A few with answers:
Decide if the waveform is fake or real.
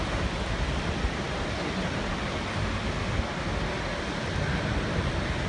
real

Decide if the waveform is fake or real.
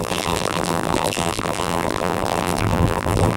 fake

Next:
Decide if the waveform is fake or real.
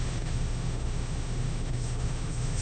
fake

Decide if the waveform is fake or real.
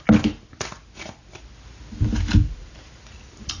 real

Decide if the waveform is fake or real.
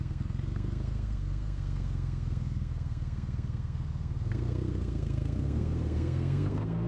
fake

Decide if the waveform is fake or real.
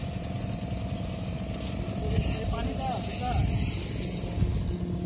real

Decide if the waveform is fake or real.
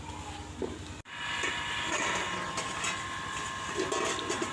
real